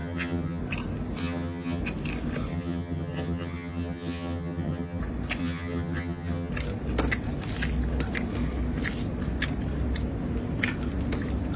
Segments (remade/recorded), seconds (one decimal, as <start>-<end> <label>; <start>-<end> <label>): 0.0-0.6 remade; 0.6-1.2 recorded; 1.2-1.8 remade; 1.8-2.5 recorded; 2.5-5.0 remade; 5.0-5.4 recorded; 5.4-6.5 remade; 6.5-11.6 recorded